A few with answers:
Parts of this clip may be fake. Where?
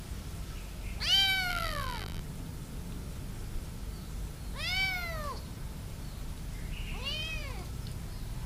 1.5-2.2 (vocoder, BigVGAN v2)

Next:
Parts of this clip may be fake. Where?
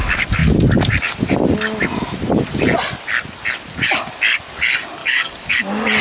5.0-5.6 (codec, DAC)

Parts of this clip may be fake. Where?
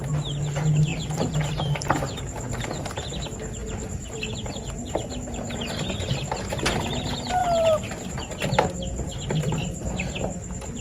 0.9-2.2 (vocoder, BigVGAN v2); 3.6-4.5; 7.4-8.3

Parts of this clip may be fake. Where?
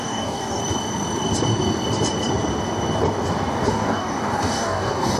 0.0-0.6 (codec, DAC); 3.7-5.2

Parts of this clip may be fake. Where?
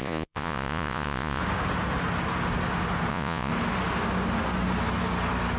0.0-1.4 (vocoder, Vocos); 3.1-3.5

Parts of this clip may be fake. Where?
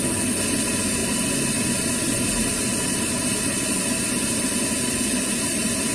none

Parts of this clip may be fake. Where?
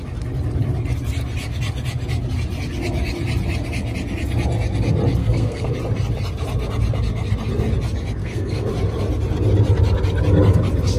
5.2-5.7 (codec, SNAC); 8.2-8.7